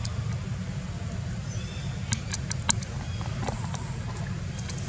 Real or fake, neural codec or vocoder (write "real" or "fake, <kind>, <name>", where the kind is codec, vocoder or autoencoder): real